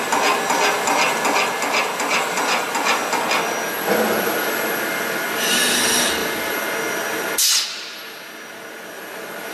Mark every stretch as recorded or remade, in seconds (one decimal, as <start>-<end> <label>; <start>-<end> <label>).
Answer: 0.0-9.5 recorded